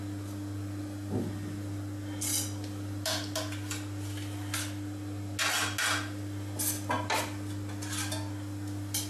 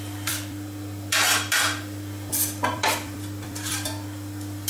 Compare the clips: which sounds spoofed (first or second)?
second